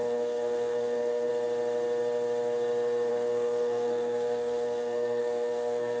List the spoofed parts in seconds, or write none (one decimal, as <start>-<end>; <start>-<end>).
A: 0.0-1.3; 3.1-6.0